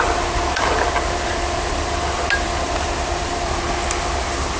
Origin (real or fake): real